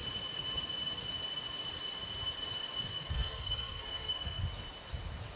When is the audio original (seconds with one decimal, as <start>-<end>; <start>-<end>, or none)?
0.0-2.9; 4.4-5.4

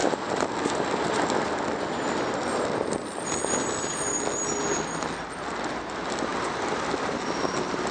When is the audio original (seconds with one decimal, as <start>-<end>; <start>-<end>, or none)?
0.0-7.9